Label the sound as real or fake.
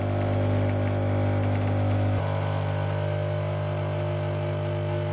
real